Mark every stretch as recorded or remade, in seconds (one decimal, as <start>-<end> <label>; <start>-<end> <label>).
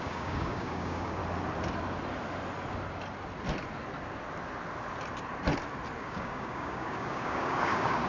0.0-1.2 remade; 1.2-6.0 recorded; 6.0-8.1 remade